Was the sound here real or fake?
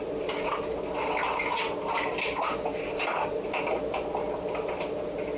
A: real